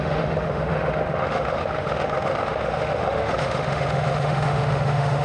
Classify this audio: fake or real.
fake